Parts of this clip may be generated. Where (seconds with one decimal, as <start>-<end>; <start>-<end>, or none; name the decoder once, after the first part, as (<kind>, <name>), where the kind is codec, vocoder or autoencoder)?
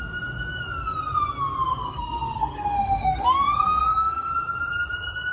1.7-4.3 (codec, SNAC)